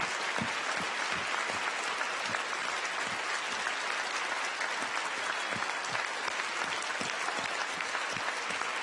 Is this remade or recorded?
recorded